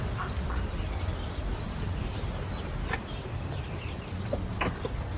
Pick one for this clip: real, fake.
real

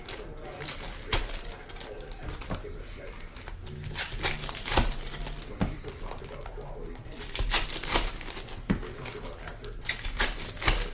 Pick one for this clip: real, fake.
real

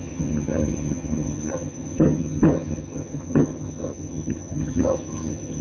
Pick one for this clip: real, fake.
fake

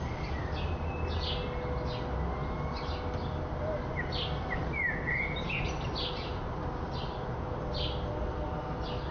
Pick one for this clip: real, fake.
real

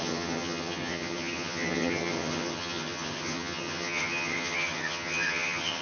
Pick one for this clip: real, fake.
fake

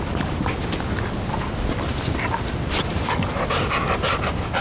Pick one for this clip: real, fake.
real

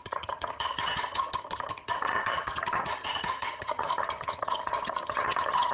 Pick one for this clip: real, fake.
fake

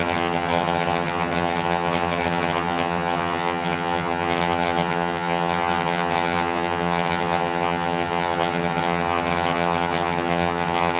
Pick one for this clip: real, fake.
fake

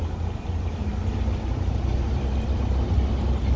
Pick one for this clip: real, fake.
real